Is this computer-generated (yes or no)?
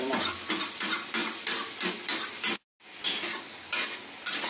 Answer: no